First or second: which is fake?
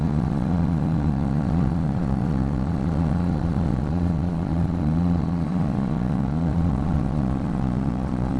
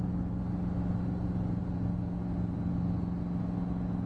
first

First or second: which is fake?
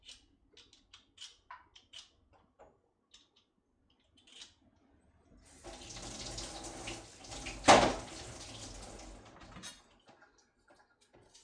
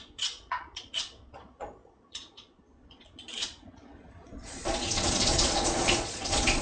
second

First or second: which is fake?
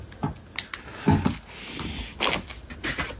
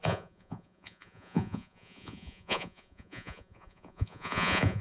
second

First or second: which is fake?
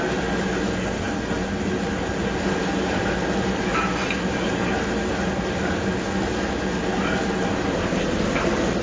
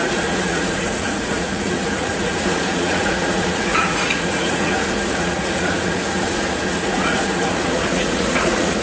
second